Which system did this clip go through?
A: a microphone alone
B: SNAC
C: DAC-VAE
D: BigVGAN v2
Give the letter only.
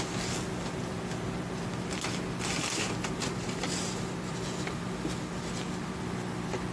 A